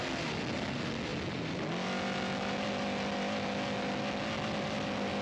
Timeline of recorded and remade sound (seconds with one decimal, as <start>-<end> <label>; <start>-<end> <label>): 0.0-5.2 recorded